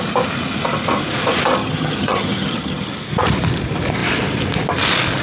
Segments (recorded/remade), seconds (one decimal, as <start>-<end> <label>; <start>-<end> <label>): 0.0-1.6 recorded; 1.6-2.9 remade; 2.9-5.2 recorded